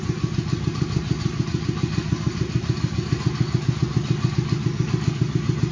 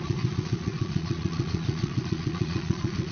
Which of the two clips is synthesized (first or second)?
second